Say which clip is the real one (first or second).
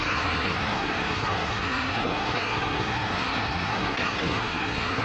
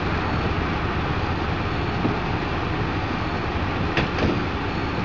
second